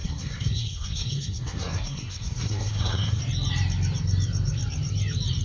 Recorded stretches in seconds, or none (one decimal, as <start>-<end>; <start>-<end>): 3.2-5.4